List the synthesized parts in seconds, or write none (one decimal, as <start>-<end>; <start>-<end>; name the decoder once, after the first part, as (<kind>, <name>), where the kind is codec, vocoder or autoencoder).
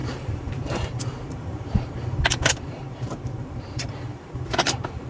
0.0-5.1 (vocoder, BigVGAN v2)